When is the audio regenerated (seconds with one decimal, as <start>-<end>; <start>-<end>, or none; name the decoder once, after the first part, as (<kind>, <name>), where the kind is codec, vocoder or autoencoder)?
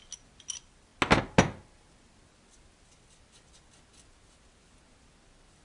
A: none